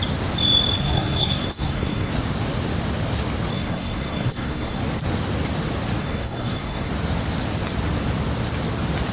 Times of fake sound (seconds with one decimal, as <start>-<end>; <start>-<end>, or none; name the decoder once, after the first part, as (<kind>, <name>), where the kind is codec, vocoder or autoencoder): 0.8-2.1 (codec, SNAC); 3.5-4.8; 6.0-6.9